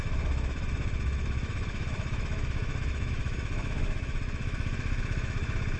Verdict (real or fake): fake